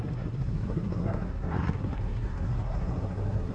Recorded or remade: remade